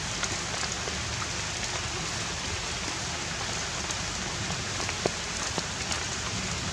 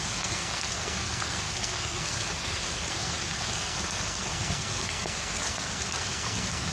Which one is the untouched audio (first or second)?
first